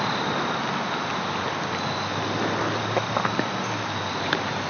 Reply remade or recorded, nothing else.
recorded